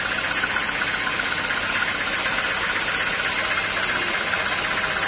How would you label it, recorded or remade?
recorded